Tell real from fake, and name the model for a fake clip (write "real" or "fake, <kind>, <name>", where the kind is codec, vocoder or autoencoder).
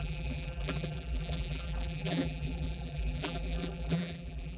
fake, vocoder, BigVGAN v2